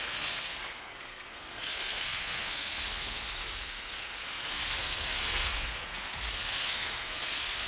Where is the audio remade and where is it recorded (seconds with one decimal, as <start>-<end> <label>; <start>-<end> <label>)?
0.0-7.7 remade